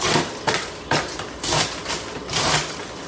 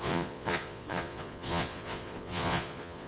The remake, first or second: second